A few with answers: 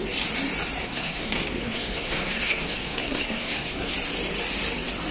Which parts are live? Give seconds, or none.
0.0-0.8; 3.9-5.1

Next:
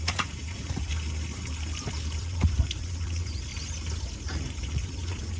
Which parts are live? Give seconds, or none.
0.9-2.2; 3.5-4.0

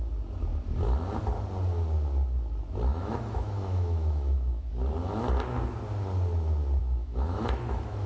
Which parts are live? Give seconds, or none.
0.0-2.9; 4.7-6.8

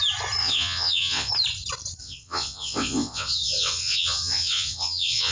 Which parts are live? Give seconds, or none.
0.0-0.4; 1.3-2.0